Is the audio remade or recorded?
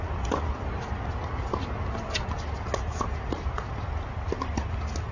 recorded